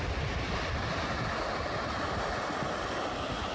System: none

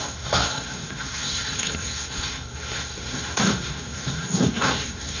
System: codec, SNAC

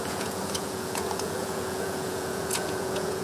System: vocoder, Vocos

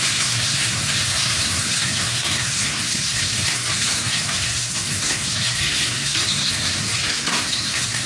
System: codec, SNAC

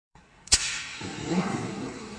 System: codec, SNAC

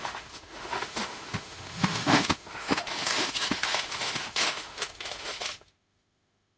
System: autoencoder, DAC-VAE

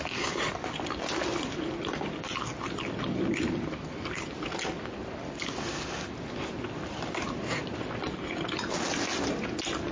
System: none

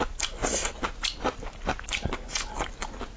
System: none